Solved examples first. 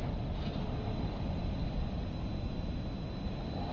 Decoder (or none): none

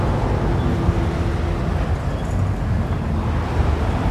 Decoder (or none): none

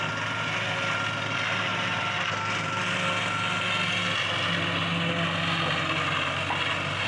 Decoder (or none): none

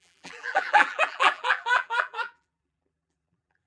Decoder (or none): vocoder, BigVGAN v2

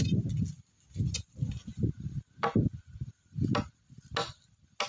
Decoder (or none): none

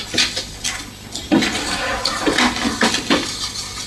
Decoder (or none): none